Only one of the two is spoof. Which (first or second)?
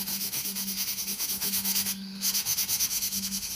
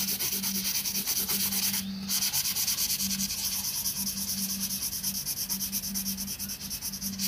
first